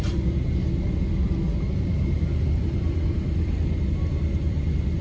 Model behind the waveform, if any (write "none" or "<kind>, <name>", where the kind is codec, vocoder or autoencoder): none